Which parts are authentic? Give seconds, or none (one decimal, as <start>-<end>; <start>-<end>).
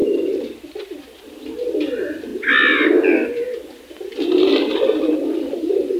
0.0-6.0